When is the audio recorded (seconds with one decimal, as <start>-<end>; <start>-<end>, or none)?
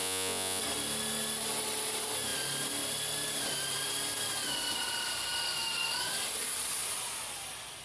0.6-7.8